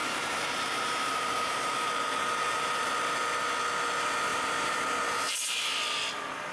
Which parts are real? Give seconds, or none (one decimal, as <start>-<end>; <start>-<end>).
2.9-4.3; 4.8-6.5